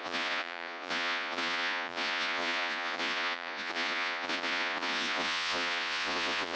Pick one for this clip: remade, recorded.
remade